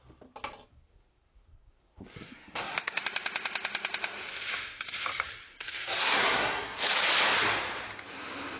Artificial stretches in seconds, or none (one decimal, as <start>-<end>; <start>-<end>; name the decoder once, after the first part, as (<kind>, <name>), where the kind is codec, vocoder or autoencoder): 0.7-3.0 (codec, SNAC); 5.1-6.8